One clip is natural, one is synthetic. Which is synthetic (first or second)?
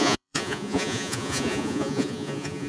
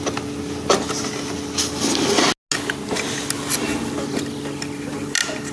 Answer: first